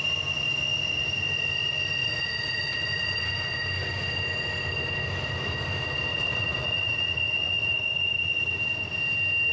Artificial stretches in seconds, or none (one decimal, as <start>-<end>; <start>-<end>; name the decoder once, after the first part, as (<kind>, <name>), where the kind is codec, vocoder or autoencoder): 2.0-3.3 (vocoder, Vocos); 6.1-8.6